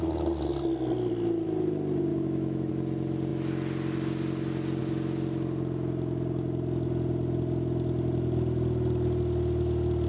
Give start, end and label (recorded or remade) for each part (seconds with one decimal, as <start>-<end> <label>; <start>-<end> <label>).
0.0-2.1 recorded; 2.1-2.7 remade; 2.7-10.1 recorded